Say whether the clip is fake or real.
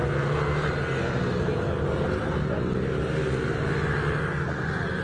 real